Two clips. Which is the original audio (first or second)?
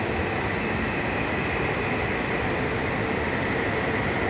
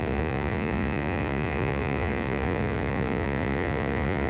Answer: first